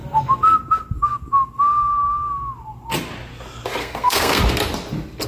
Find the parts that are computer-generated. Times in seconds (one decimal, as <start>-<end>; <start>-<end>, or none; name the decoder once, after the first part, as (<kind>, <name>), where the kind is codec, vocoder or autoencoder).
3.8-4.4 (codec, SNAC)